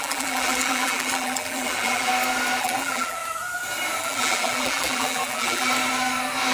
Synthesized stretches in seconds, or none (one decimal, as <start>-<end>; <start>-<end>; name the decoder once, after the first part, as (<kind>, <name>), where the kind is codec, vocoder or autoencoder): 0.0-2.1 (vocoder, BigVGAN v2); 2.6-3.2; 4.0-5.7